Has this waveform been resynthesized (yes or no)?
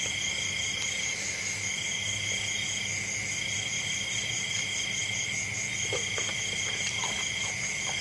no